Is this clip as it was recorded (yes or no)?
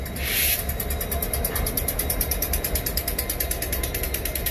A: yes